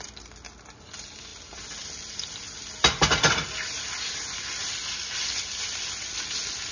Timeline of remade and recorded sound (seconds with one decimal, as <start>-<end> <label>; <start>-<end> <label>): 0.0-6.7 recorded